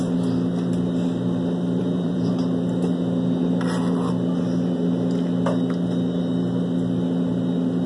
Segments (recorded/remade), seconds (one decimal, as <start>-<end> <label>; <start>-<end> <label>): 0.0-1.8 recorded; 1.8-2.3 remade; 2.3-7.9 recorded